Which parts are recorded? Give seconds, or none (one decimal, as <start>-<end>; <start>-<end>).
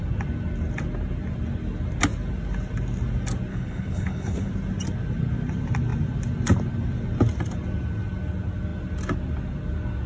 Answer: 0.0-3.5; 4.5-10.1